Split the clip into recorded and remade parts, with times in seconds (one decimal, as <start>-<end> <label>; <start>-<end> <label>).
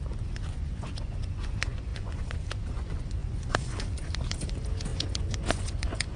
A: 0.0-6.2 remade